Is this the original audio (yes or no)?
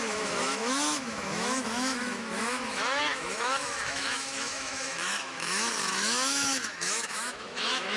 no